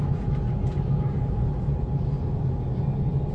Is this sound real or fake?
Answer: real